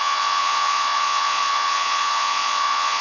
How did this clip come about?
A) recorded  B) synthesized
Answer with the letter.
B